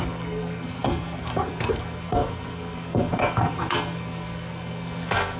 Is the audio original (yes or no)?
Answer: no